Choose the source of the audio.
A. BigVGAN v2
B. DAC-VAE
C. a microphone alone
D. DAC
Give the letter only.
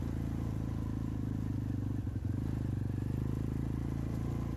C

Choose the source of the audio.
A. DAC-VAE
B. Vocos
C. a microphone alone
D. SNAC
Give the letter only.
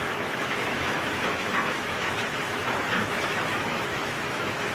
A